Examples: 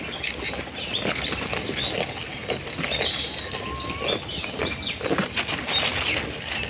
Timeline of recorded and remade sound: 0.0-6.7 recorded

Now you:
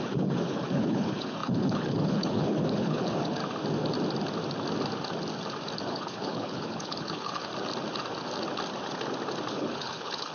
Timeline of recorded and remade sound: 0.0-3.4 remade; 3.4-5.8 recorded; 5.8-7.5 remade; 7.5-9.5 recorded; 9.5-10.3 remade

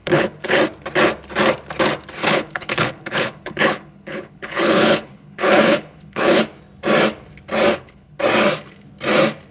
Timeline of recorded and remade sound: 0.0-0.6 remade; 0.6-2.2 recorded; 2.2-6.4 remade; 6.4-7.7 recorded; 7.7-8.2 remade; 8.2-9.5 recorded